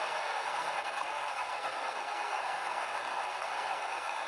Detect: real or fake fake